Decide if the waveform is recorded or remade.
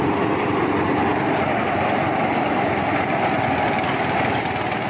recorded